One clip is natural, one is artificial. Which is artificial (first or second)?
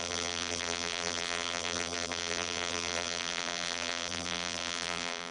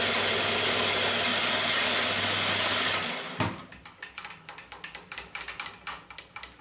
first